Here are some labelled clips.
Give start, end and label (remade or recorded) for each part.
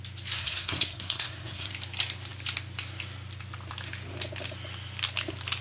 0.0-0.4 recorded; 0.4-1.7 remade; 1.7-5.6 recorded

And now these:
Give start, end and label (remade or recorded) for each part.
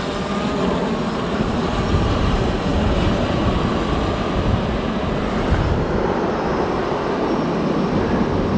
0.0-8.6 recorded